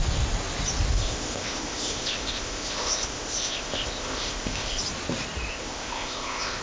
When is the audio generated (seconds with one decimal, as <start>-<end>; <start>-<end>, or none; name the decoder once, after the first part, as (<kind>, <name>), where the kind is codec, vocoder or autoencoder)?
0.9-4.8 (codec, ZipCodec); 5.5-6.6